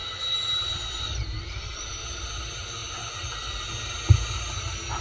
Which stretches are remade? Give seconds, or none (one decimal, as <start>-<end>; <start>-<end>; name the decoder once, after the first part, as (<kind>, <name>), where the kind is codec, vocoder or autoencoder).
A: 0.0-1.8 (vocoder, BigVGAN v2)